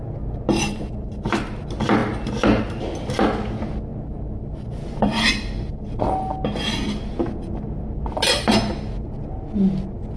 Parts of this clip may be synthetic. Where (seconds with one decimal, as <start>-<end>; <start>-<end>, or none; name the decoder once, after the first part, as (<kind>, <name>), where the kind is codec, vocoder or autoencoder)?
none